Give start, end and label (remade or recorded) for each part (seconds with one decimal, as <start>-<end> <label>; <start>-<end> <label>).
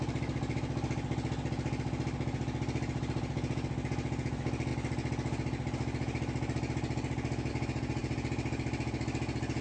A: 0.0-9.6 recorded